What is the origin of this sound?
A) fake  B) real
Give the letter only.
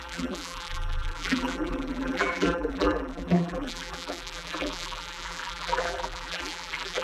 A